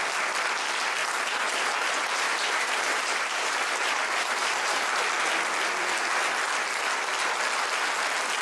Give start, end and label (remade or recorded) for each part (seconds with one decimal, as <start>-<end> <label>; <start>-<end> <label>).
0.0-1.0 recorded; 1.0-5.0 remade; 5.0-8.4 recorded